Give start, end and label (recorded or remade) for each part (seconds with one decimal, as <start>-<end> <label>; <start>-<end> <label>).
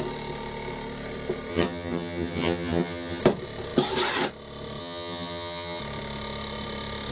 0.0-1.5 recorded; 1.5-3.2 remade; 3.2-4.8 recorded; 4.8-5.8 remade; 5.8-7.1 recorded